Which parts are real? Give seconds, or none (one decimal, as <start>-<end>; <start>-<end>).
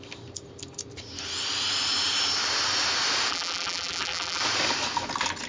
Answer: 0.0-3.3; 4.4-5.5